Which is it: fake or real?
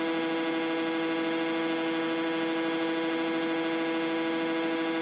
real